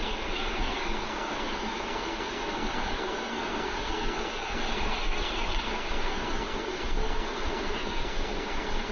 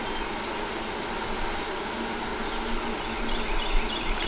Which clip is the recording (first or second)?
second